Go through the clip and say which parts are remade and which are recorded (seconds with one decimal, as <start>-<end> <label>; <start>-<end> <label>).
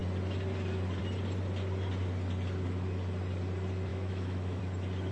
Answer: 0.0-3.9 recorded; 3.9-4.6 remade; 4.6-5.1 recorded